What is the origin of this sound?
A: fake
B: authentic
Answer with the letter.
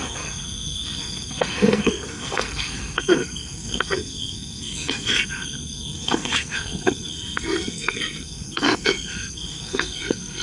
A